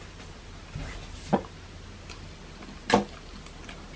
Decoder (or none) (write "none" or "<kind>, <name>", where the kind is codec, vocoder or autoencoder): none